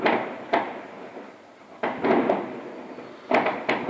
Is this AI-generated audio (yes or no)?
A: no